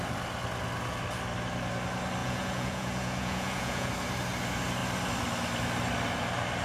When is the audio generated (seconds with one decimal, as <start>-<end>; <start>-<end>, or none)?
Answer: 2.2-3.9